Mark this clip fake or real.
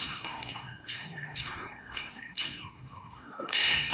fake